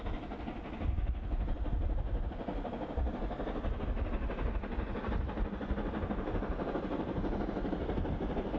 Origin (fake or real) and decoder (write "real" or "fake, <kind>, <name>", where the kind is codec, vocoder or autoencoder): real